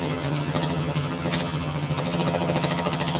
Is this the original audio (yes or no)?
no